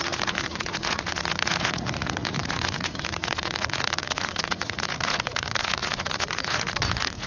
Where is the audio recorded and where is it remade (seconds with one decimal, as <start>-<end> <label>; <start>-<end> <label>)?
0.0-7.3 remade